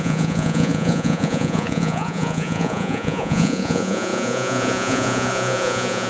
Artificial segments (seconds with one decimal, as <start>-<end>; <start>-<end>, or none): 0.0-6.1